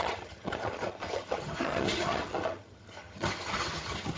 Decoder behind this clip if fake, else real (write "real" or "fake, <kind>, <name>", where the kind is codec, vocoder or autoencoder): fake, vocoder, HiFi-GAN